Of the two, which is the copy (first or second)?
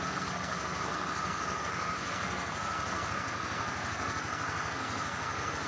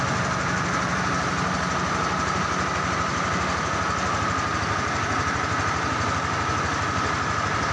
first